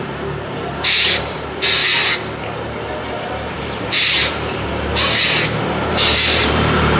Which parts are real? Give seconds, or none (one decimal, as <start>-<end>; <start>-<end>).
1.8-3.5; 4.9-5.9